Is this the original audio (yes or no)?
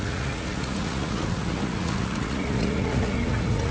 no